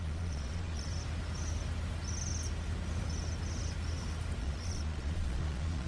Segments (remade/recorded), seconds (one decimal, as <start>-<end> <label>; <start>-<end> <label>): 0.0-0.9 remade; 0.9-4.4 recorded; 4.4-5.9 remade